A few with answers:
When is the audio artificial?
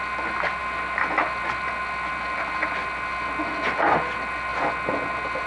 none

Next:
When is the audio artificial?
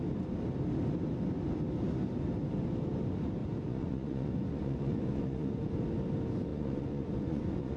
3.4-5.7; 6.5-7.8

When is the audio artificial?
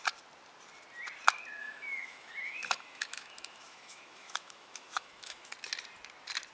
1.6-5.5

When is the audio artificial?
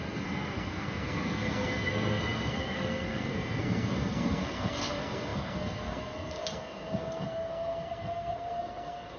0.0-9.2